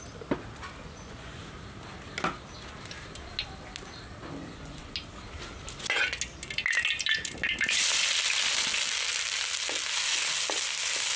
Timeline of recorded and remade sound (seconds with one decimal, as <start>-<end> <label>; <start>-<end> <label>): 0.0-0.8 recorded; 0.8-1.4 remade; 1.4-4.4 recorded; 4.4-4.9 remade; 4.9-11.2 recorded